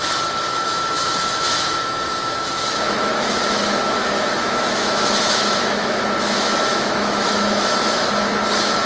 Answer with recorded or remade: remade